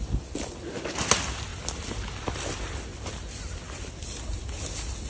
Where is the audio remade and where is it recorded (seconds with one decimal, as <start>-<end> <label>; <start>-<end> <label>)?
0.0-5.1 recorded